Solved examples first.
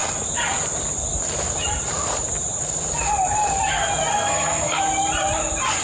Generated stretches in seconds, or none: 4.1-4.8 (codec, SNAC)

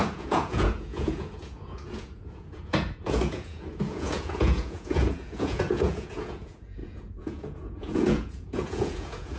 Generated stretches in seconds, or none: 0.0-9.4 (vocoder, Vocos)

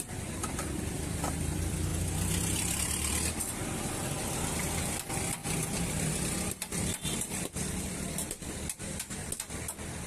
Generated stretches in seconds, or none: 0.0-9.2 (vocoder, BigVGAN v2)

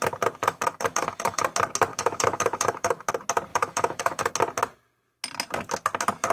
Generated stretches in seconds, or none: 0.4-1.4 (autoencoder, DAC-VAE); 1.9-3.1; 3.5-4.3

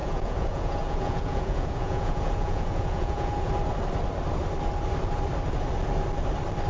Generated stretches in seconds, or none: 0.0-3.5 (vocoder, Vocos)

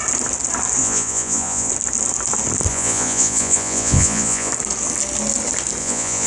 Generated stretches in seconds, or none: 0.8-1.7 (vocoder, Vocos); 2.7-4.5; 5.8-6.3